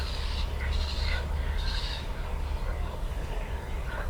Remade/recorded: remade